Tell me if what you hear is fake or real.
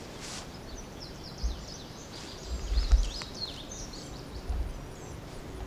fake